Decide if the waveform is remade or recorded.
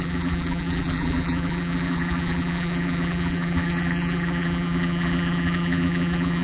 remade